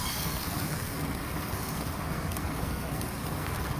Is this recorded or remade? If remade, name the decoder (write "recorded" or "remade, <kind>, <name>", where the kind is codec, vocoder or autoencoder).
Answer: remade, codec, SNAC